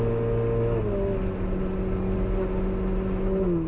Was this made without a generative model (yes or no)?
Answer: yes